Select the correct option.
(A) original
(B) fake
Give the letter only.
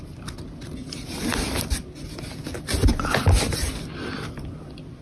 A